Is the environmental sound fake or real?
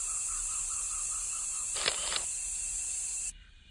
fake